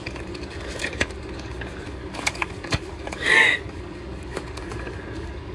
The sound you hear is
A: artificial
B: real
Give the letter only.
A